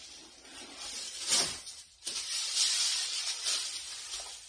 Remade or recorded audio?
recorded